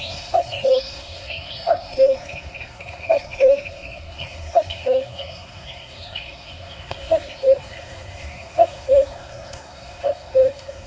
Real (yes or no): no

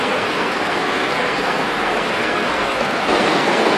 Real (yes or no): no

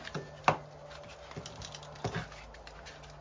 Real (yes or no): yes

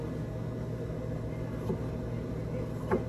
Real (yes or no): yes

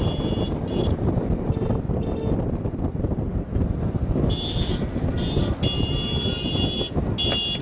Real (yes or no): yes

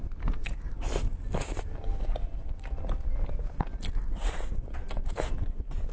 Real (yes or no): yes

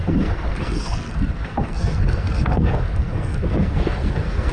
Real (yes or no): no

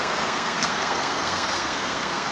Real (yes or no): no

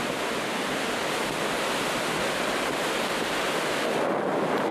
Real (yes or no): yes